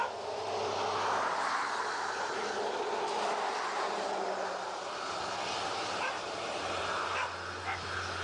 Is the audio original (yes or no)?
yes